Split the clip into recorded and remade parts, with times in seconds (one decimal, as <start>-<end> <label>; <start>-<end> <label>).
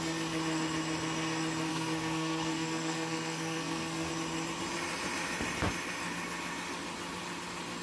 0.0-1.7 recorded; 1.7-4.1 remade; 4.1-7.8 recorded